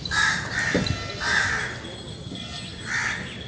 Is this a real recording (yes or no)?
yes